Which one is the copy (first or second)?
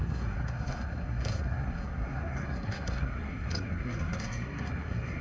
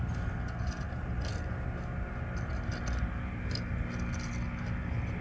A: first